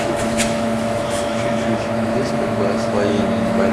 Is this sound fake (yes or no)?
yes